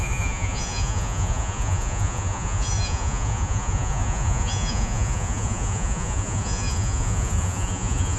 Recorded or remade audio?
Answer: remade